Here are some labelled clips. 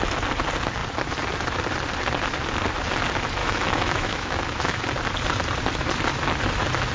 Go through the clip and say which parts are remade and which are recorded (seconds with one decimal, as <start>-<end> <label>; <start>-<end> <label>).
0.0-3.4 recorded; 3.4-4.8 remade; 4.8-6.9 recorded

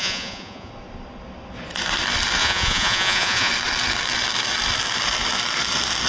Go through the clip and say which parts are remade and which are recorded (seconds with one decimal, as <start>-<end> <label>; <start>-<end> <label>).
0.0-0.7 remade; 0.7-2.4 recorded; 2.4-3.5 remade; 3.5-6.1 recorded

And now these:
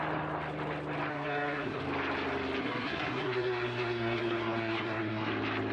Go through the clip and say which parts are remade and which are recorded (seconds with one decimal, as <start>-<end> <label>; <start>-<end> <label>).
0.0-1.1 recorded; 1.1-1.8 remade; 1.8-2.6 recorded; 2.6-5.3 remade; 5.3-5.7 recorded